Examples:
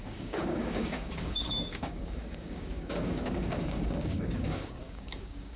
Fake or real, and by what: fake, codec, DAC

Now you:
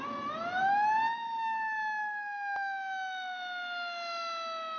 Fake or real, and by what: real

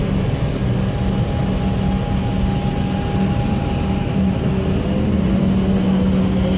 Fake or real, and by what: real